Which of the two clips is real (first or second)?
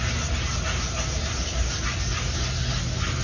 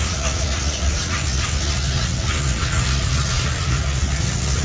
first